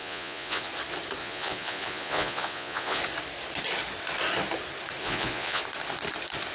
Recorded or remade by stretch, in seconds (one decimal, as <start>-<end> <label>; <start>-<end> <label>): 0.0-0.7 remade; 0.7-1.2 recorded; 1.2-3.0 remade; 3.0-5.0 recorded; 5.0-5.6 remade; 5.6-6.5 recorded